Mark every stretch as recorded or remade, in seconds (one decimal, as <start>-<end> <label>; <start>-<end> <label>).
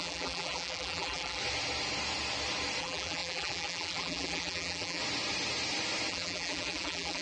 0.0-1.4 remade; 1.4-2.8 recorded; 2.8-5.0 remade; 5.0-6.1 recorded; 6.1-7.2 remade